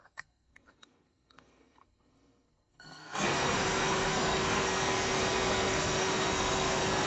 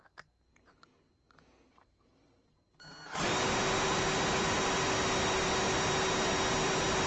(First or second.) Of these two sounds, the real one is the second